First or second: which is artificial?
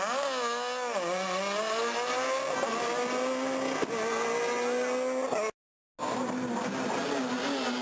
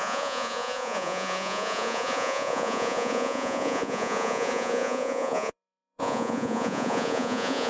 second